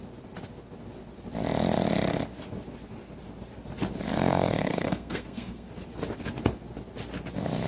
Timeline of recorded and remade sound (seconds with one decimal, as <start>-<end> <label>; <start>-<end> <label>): 0.0-4.1 recorded; 4.1-5.7 remade; 5.7-7.7 recorded